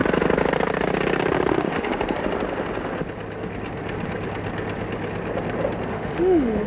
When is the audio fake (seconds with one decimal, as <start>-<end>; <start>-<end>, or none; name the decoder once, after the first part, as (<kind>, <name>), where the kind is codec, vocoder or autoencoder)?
1.5-1.9 (autoencoder, DAC-VAE); 5.9-6.7